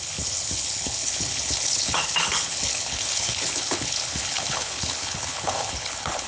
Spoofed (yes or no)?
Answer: yes